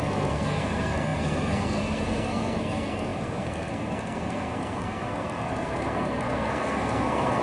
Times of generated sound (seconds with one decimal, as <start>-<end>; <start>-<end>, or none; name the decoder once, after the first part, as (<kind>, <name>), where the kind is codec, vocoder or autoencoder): 0.0-7.4 (codec, SNAC)